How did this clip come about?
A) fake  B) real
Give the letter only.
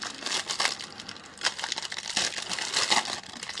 B